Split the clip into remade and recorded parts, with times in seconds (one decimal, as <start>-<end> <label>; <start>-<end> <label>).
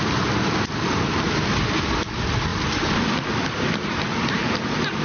0.0-5.0 recorded